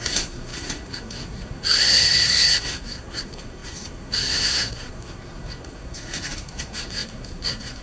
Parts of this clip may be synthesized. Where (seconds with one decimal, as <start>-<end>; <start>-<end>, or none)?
0.0-7.8